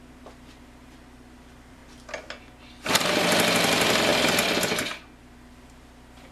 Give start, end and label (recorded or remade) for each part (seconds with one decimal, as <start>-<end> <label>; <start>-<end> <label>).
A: 0.0-1.8 remade; 1.8-2.6 recorded; 2.6-4.1 remade; 4.1-5.2 recorded; 5.2-6.3 remade